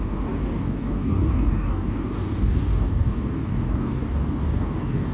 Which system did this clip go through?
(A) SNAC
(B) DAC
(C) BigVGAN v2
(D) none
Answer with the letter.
B